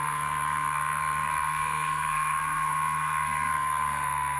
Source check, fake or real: fake